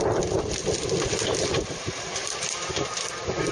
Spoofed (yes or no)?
no